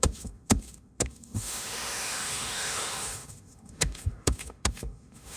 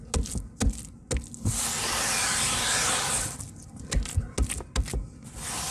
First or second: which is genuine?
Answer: second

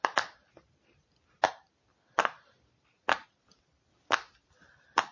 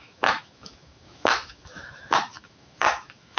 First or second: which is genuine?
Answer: first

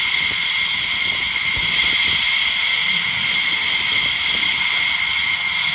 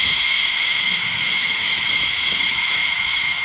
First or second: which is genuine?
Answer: first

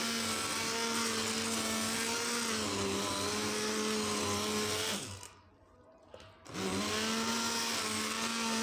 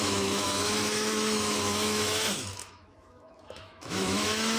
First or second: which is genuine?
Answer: first